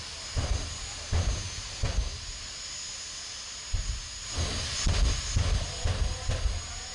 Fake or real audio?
real